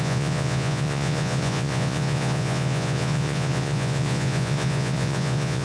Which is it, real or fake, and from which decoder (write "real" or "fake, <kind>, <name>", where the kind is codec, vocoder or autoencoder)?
fake, vocoder, Vocos